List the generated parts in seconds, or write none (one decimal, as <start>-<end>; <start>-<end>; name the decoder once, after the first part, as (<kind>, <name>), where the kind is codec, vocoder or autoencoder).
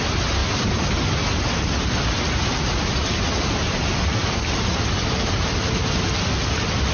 none